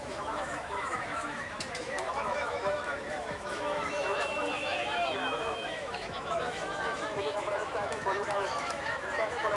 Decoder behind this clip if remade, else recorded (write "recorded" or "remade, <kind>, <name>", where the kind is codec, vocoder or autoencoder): remade, autoencoder, DAC-VAE